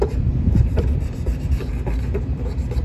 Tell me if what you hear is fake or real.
fake